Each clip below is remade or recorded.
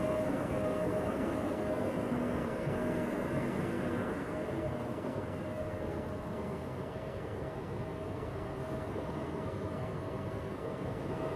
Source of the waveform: remade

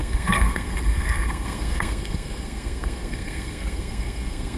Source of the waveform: remade